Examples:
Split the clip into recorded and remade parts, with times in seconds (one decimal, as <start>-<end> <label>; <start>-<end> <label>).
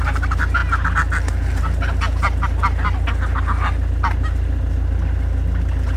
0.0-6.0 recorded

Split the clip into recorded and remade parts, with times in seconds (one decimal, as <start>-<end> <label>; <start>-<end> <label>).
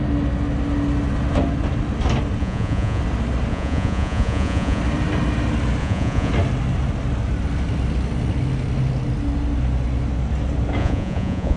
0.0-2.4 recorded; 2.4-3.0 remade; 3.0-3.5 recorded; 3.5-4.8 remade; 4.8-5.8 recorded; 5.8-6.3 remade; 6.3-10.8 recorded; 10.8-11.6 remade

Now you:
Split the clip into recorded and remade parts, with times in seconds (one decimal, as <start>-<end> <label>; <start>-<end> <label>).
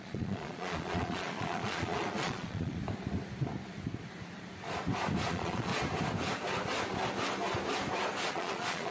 0.0-2.8 remade; 2.8-5.3 recorded; 5.3-5.7 remade; 5.7-8.3 recorded; 8.3-8.9 remade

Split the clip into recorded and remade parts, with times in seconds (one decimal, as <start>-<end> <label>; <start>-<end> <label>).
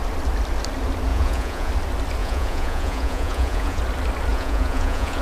0.0-1.1 recorded; 1.1-1.7 remade; 1.7-2.2 recorded; 2.2-3.8 remade; 3.8-4.3 recorded; 4.3-5.2 remade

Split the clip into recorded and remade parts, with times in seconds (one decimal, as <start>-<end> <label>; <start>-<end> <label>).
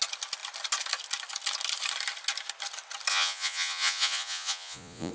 0.0-3.1 recorded; 3.1-5.1 remade